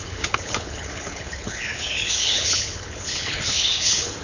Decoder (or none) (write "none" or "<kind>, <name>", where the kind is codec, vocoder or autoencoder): codec, HILCodec